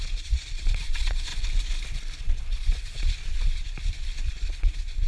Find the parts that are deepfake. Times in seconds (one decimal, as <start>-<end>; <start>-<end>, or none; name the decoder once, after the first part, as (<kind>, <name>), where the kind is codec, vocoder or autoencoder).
0.0-1.3 (vocoder, Vocos); 2.2-3.6; 4.3-5.1